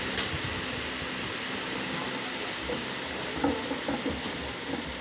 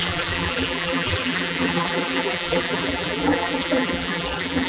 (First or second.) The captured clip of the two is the first